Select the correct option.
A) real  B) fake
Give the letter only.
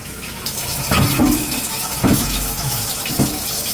B